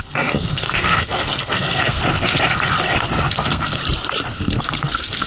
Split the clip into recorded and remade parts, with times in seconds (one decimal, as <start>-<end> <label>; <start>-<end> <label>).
0.0-2.0 remade; 2.0-3.3 recorded; 3.3-3.8 remade; 3.8-4.3 recorded; 4.3-5.3 remade